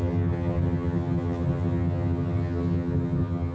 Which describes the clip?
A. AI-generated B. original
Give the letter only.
A